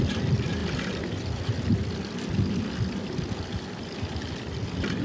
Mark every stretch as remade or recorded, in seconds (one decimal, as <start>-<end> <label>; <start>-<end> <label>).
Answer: 0.0-0.6 remade; 0.6-3.6 recorded; 3.6-5.0 remade